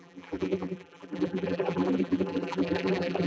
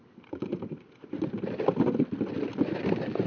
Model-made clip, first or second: first